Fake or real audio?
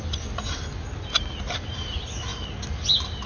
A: real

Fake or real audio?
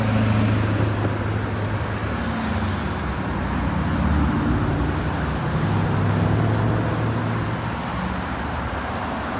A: real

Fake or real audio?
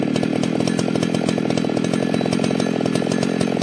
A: real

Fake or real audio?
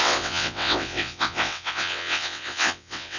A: fake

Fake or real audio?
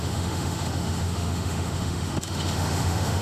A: fake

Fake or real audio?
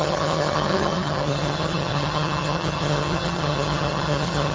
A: fake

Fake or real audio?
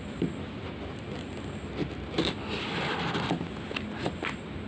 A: real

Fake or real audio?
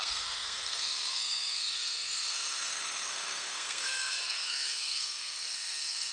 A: fake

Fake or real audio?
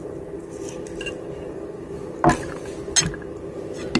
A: real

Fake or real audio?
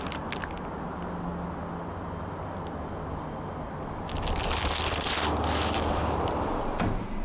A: real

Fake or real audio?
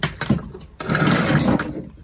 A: fake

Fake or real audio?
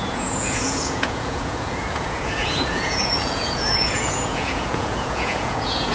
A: fake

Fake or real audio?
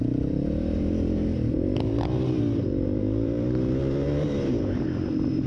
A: fake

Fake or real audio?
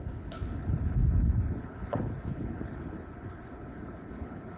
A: fake